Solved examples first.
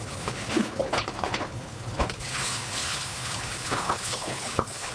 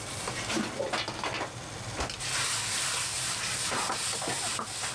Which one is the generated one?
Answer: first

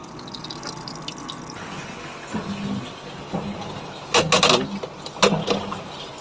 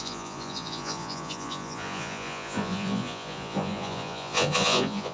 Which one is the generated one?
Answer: second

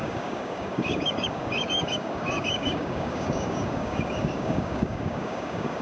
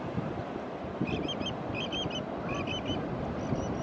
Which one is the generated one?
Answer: first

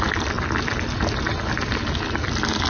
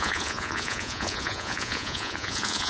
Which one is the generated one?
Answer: second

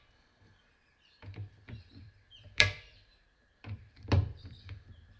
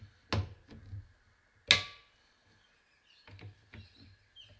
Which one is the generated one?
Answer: first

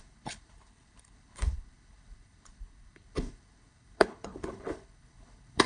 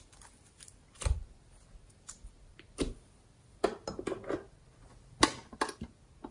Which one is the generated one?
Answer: first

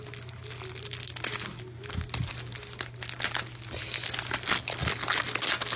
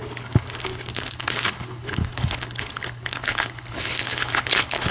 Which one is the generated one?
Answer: second